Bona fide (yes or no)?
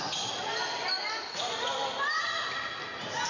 yes